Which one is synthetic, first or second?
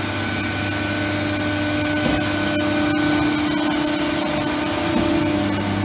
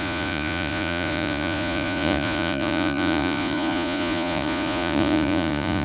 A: second